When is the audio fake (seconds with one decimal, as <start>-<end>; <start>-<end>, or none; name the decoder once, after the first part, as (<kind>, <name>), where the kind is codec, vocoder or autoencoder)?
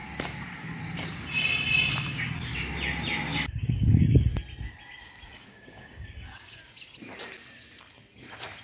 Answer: 3.3-4.3 (codec, DAC); 5.3-6.6